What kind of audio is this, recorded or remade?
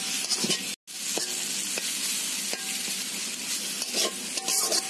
recorded